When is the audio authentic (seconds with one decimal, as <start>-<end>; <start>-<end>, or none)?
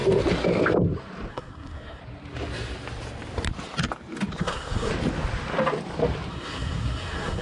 0.0-1.3; 2.0-4.4; 4.9-6.3